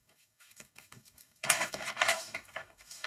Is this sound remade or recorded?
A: remade